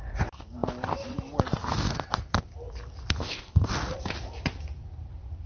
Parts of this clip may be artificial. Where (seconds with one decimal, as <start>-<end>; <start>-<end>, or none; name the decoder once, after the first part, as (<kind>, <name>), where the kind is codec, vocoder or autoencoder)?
3.2-3.7 (codec, ZipCodec)

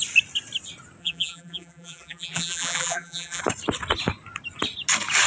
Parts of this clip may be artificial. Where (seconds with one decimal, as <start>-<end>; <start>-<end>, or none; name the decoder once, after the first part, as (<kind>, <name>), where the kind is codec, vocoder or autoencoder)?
1.0-3.4 (vocoder, BigVGAN v2)

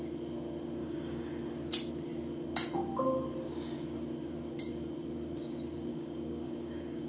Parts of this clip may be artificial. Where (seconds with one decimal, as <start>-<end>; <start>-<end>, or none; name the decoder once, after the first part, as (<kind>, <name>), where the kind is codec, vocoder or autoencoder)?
0.8-1.3 (codec, DAC); 5.9-7.1